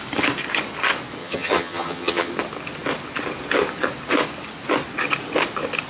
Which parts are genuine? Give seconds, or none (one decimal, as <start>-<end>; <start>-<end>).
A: 0.0-1.2; 2.3-5.9